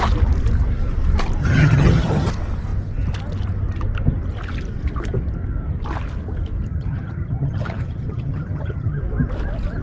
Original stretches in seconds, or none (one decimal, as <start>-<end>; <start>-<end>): 0.0-1.4; 2.3-6.7; 9.0-9.8

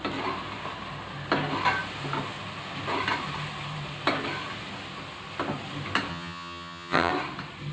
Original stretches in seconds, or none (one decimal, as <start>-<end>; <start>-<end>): 0.0-6.1; 7.1-7.7

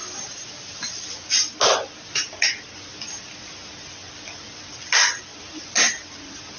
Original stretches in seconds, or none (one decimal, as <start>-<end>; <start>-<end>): 0.0-6.6

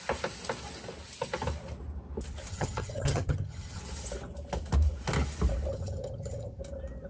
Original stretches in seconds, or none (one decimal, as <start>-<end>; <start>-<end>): 0.0-2.5; 3.8-5.7; 6.6-7.1

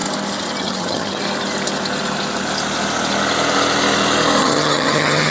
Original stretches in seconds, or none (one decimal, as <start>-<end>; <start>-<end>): 0.0-0.6; 1.2-4.4

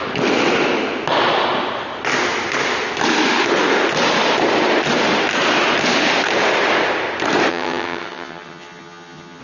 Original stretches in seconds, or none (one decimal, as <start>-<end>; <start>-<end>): 0.0-7.5

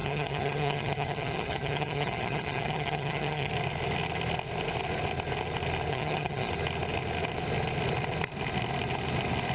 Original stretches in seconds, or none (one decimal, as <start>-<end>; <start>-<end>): 3.5-5.9; 6.5-9.5

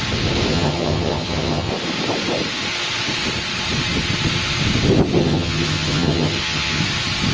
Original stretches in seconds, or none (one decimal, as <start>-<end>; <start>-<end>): 0.0-0.5; 1.7-5.2; 6.8-7.3